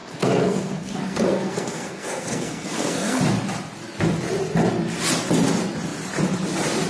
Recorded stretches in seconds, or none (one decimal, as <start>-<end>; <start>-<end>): 3.2-6.9